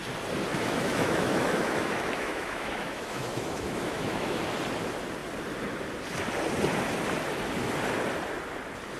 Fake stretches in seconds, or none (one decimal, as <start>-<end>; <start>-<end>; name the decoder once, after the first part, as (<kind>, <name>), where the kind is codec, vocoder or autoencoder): 0.5-4.4 (autoencoder, DAC-VAE)